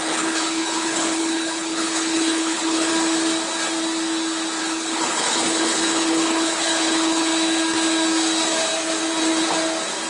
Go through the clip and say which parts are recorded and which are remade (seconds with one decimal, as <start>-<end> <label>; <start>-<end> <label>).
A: 0.0-2.9 remade; 2.9-4.6 recorded; 4.6-7.3 remade; 7.3-10.1 recorded